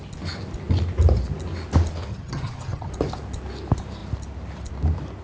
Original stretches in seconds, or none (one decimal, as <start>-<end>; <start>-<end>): 0.0-2.1; 2.9-5.2